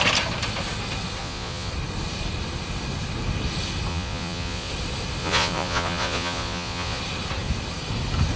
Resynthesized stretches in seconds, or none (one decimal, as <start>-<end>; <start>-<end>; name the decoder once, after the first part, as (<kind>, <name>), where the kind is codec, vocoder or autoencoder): 1.2-1.7 (vocoder, Vocos); 3.9-4.7; 5.2-7.0